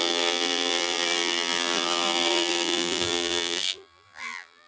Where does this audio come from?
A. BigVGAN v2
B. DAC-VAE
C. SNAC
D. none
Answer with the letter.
A